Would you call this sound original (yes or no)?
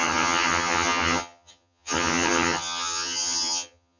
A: no